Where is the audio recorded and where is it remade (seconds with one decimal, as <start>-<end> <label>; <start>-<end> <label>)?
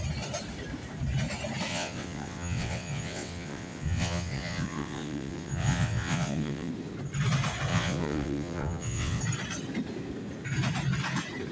0.0-1.7 recorded; 1.7-6.7 remade; 6.7-7.7 recorded; 7.7-9.2 remade; 9.2-11.5 recorded